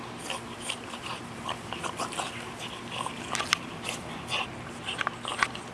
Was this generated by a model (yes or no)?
no